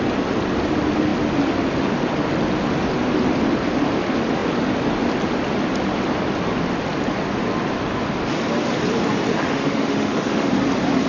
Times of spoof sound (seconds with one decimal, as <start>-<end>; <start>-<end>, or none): 9.3-10.5